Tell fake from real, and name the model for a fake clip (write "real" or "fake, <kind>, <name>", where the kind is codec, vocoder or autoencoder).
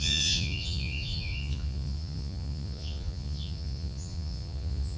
fake, vocoder, Vocos